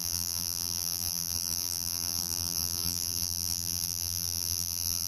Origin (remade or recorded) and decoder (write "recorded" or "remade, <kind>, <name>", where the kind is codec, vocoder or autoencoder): remade, vocoder, BigVGAN v2